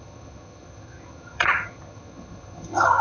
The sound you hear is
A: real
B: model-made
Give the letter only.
B